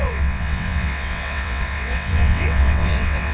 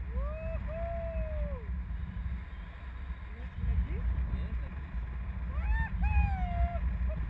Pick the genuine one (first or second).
second